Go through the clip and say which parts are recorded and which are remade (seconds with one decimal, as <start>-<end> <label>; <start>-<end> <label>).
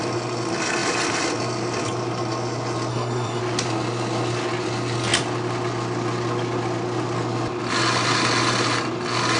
0.0-2.9 recorded; 2.9-3.4 remade; 3.4-9.4 recorded